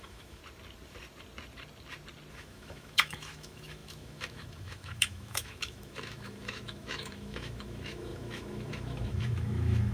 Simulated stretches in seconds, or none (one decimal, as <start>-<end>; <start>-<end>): 0.0-0.4; 2.3-9.9